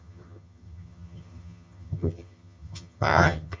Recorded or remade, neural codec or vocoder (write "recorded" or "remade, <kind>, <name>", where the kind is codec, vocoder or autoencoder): remade, vocoder, HiFi-GAN